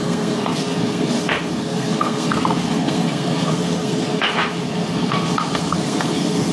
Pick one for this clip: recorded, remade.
remade